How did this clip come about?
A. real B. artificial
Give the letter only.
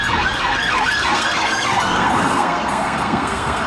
B